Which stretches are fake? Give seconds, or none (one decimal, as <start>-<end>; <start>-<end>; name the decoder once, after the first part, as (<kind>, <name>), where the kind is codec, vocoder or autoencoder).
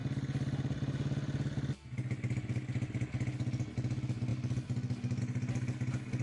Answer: none